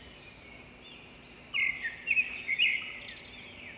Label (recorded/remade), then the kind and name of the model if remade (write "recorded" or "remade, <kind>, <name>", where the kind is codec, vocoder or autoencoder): recorded